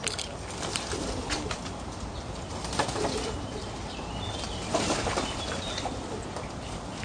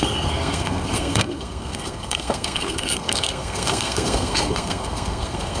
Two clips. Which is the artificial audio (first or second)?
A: second